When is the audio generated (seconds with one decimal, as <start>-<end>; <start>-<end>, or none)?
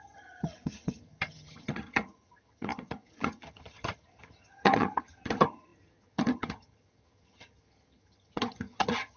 0.0-9.2